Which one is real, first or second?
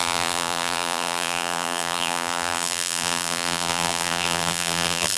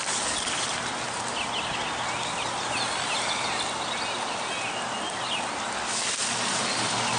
second